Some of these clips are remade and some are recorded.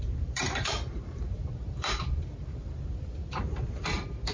remade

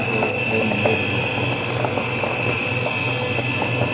recorded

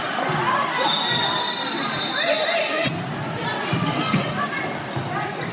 recorded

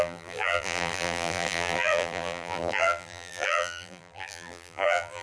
remade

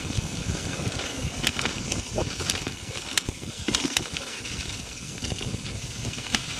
remade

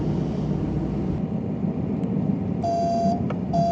recorded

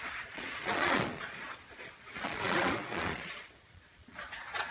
remade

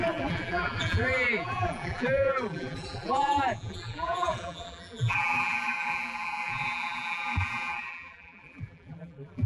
remade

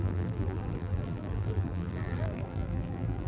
remade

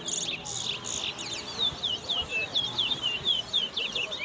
recorded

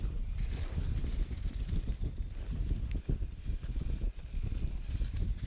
remade